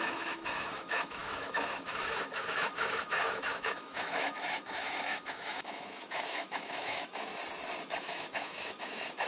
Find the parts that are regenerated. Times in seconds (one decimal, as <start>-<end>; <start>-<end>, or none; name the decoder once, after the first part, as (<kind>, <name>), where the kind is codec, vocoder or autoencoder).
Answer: 0.0-7.3 (autoencoder, DAC-VAE); 8.0-9.3